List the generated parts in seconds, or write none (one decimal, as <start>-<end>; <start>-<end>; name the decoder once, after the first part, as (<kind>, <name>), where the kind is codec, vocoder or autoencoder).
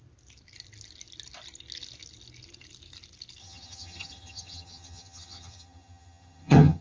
3.4-6.8 (vocoder, HiFi-GAN)